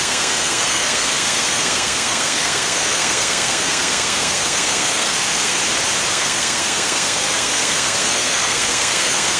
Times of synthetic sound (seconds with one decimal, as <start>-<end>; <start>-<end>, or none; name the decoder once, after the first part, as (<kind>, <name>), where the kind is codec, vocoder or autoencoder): 0.0-5.6 (codec, SNAC); 6.1-9.4